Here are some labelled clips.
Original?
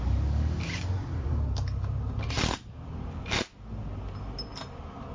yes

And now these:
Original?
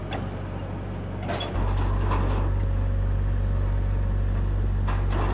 yes